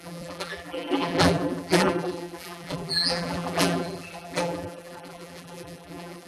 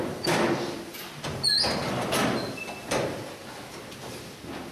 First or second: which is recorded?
second